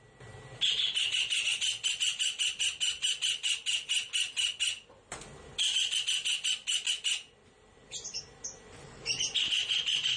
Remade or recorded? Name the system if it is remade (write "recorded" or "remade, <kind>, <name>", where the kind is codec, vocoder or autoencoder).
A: recorded